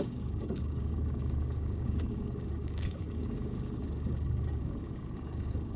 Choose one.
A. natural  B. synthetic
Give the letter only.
B